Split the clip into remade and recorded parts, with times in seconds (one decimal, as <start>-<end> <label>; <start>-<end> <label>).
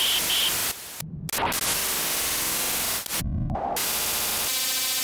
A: 0.0-5.0 recorded